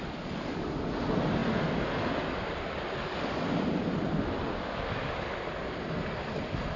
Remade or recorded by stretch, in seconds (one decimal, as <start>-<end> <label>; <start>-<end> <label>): 0.0-6.8 recorded